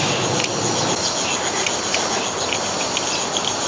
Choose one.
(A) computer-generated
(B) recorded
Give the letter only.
B